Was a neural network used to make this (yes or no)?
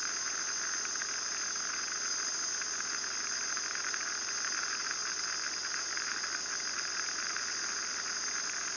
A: no